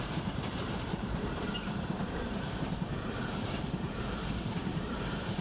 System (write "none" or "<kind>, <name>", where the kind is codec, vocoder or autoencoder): vocoder, BigVGAN v2